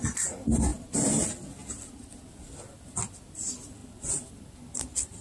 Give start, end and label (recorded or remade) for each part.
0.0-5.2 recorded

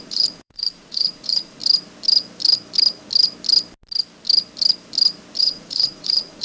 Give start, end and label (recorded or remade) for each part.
0.0-1.6 remade; 1.6-5.4 recorded; 5.4-6.4 remade

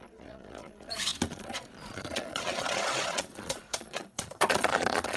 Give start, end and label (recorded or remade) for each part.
0.0-5.2 remade

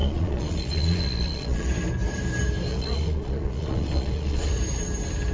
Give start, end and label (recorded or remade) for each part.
0.0-1.7 remade; 1.7-2.7 recorded; 2.7-4.5 remade; 4.5-5.3 recorded

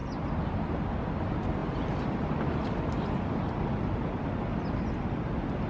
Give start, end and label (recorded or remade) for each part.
0.0-5.7 recorded

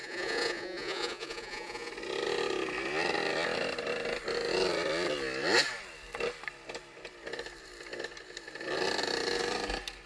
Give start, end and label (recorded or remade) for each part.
0.0-1.9 remade; 1.9-10.1 recorded